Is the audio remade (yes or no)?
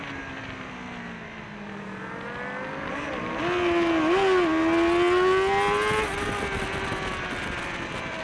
no